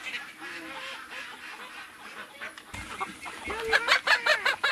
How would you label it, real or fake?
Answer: real